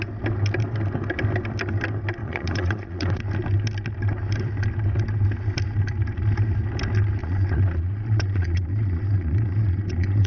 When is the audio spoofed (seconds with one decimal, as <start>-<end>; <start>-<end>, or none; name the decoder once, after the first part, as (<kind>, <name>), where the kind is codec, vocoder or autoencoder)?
2.2-3.2 (vocoder, Vocos); 7.2-10.3